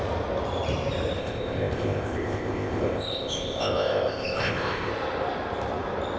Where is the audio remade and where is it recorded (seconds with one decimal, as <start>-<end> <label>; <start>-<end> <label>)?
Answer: 0.0-1.2 recorded; 1.2-4.9 remade; 4.9-6.2 recorded